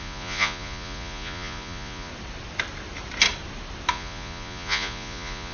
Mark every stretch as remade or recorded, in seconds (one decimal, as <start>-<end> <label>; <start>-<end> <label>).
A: 0.0-2.1 remade; 2.1-3.9 recorded; 3.9-5.5 remade

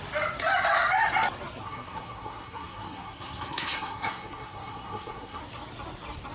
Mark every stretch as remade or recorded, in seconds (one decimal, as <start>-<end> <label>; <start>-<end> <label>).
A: 0.0-1.6 recorded; 1.6-5.4 remade; 5.4-6.3 recorded